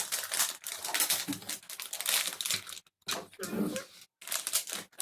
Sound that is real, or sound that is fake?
real